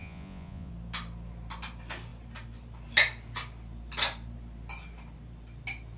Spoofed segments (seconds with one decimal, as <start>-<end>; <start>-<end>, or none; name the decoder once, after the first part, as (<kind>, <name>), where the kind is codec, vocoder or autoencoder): 0.0-0.7 (vocoder, Vocos)